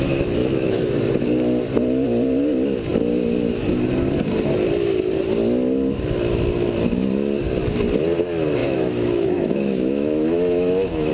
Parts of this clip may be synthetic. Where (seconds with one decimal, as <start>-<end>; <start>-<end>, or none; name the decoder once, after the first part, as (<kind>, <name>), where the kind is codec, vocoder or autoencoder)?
0.4-0.9 (autoencoder, DAC-VAE); 8.6-11.1